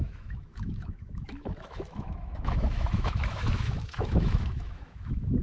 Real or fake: fake